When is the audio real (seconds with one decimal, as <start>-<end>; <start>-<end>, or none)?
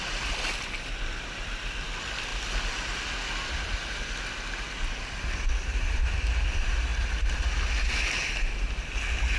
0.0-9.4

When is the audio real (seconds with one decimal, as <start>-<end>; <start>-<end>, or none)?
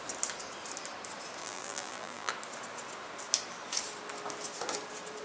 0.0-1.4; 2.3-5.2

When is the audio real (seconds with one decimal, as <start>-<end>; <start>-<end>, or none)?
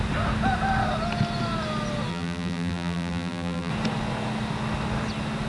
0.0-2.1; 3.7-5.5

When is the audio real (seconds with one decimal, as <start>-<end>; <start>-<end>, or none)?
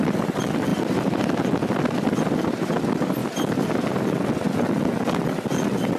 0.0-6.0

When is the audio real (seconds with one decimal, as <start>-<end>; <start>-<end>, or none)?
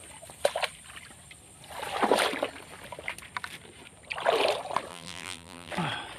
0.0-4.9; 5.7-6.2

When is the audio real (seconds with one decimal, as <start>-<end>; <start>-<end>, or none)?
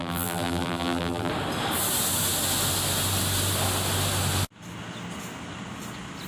1.3-6.3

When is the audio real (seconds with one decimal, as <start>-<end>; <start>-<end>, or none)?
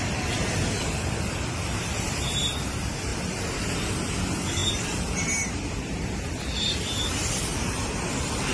7.5-8.1